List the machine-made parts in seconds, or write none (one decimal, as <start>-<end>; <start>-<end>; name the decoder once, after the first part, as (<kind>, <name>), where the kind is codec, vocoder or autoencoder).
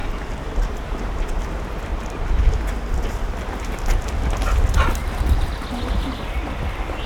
0.0-1.2 (vocoder, BigVGAN v2); 1.9-2.6; 5.0-6.0